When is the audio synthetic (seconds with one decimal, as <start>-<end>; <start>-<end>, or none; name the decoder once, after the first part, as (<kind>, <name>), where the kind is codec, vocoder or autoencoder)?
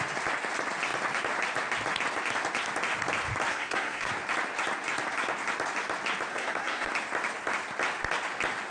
3.5-4.1 (codec, SNAC); 6.3-6.9